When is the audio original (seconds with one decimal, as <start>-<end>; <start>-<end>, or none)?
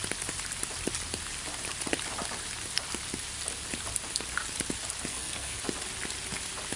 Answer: 0.0-5.1; 5.6-6.8